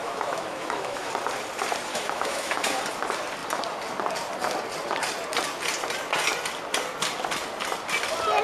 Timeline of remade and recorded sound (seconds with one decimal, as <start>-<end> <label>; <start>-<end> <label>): 0.0-1.1 remade; 1.1-1.9 recorded; 1.9-2.8 remade; 2.8-8.4 recorded